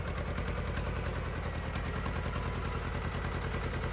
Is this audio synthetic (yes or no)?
no